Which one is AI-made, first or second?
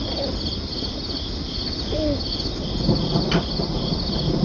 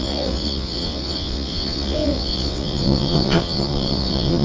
second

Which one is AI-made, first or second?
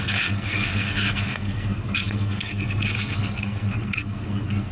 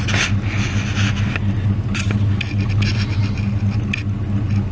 first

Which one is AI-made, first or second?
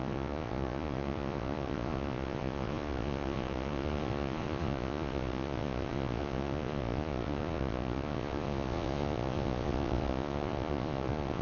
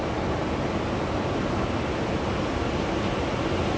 first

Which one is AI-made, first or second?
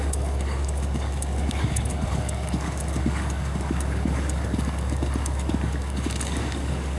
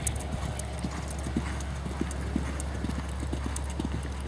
first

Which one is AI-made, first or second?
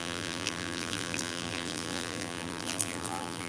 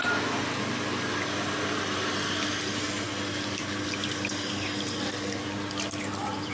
first